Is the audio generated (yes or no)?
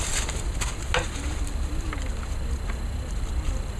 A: no